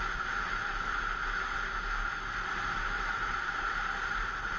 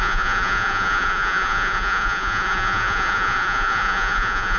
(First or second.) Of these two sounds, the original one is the first